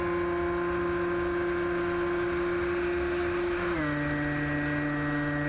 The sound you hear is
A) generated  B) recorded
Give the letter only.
B